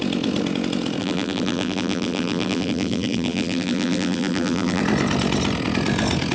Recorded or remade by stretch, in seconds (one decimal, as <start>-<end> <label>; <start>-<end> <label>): 0.0-1.0 recorded; 1.0-4.8 remade; 4.8-6.3 recorded